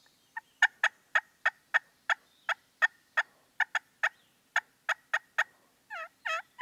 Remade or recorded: recorded